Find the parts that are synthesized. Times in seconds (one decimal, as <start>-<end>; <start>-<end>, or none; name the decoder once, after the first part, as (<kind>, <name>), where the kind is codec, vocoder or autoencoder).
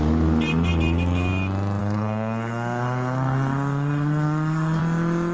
1.8-4.8 (codec, SNAC)